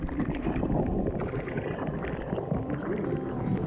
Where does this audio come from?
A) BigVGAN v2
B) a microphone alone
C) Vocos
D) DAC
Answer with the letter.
B